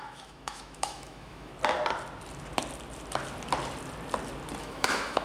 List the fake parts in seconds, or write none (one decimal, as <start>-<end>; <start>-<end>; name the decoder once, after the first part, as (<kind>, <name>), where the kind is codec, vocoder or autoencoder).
0.0-1.5 (autoencoder, DAC-VAE); 4.6-5.2